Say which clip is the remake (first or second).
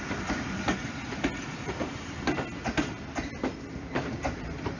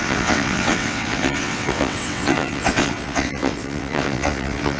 second